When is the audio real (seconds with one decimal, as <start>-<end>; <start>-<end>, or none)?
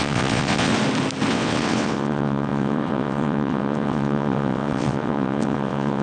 0.7-1.3